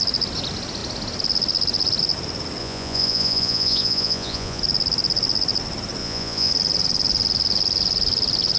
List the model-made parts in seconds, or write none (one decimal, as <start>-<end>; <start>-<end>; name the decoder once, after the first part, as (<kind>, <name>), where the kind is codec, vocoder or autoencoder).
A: 2.6-4.6 (vocoder, Vocos); 6.0-6.5